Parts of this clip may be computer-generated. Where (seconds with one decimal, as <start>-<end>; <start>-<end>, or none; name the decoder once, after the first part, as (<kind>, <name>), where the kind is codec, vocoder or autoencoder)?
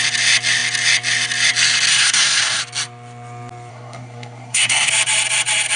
1.9-2.6 (codec, SNAC); 3.7-4.9